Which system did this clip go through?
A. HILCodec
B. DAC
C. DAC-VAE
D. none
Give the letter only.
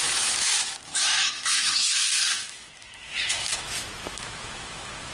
C